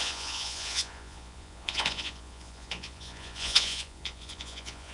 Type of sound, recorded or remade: remade